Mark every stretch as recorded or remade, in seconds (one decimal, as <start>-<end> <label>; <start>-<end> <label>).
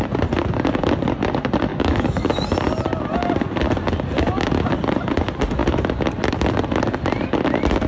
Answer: 0.0-1.7 recorded; 1.7-2.3 remade; 2.3-7.9 recorded